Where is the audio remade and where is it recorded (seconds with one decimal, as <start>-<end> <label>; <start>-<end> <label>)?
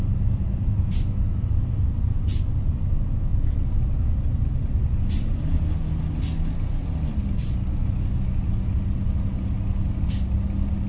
0.0-10.9 recorded